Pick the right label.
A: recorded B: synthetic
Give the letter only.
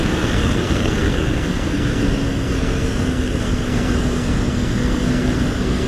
B